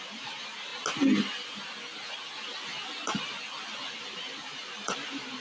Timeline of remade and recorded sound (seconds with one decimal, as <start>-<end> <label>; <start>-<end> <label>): 0.0-0.7 remade; 0.7-3.9 recorded; 3.9-5.4 remade